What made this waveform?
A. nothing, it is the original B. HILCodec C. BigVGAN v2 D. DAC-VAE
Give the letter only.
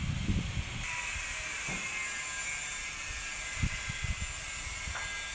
A